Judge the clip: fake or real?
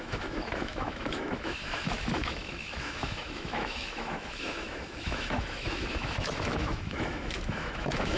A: fake